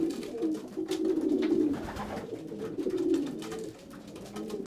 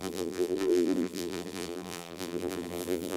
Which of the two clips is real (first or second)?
first